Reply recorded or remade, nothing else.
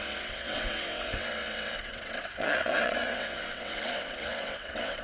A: remade